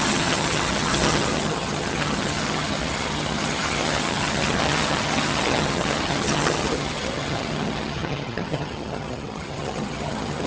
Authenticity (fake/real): fake